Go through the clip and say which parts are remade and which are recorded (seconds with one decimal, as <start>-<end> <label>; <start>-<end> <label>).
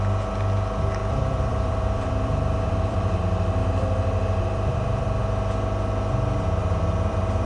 0.0-1.0 recorded; 1.0-3.2 remade; 3.2-3.6 recorded; 3.6-5.2 remade; 5.2-6.6 recorded; 6.6-7.5 remade